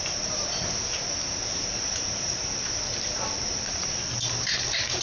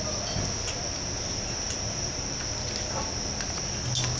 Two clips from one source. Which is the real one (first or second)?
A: second